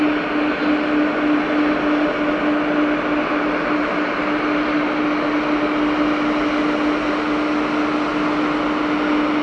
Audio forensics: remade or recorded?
recorded